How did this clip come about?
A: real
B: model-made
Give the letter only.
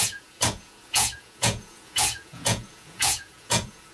B